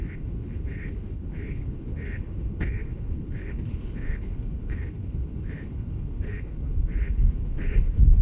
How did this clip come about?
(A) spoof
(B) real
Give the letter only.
A